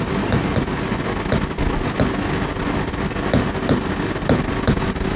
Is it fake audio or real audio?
real